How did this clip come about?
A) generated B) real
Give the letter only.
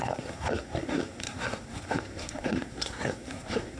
A